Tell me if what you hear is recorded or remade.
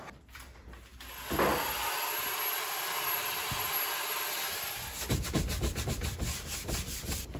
remade